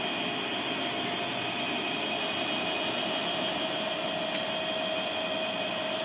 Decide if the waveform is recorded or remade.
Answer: recorded